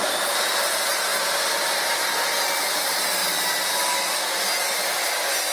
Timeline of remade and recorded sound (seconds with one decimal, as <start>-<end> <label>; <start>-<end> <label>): 0.0-1.1 recorded; 1.1-1.8 remade; 1.8-3.2 recorded; 3.2-4.7 remade; 4.7-5.5 recorded